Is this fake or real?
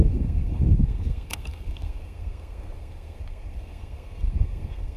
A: fake